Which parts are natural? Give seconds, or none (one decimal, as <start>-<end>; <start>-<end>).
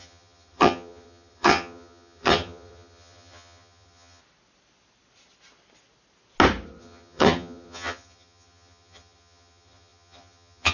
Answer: 4.2-6.8